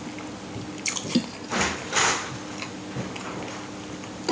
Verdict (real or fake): real